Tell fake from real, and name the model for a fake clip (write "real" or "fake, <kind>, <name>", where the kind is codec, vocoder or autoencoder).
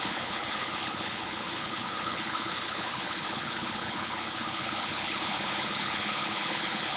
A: fake, codec, HILCodec